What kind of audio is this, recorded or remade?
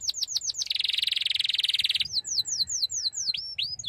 recorded